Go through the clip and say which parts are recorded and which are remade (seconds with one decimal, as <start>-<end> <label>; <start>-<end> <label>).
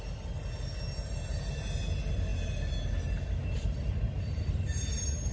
0.0-5.3 recorded